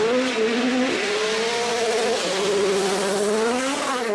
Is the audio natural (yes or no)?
yes